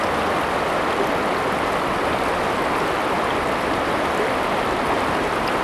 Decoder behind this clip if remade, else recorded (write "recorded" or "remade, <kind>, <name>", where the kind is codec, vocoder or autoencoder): recorded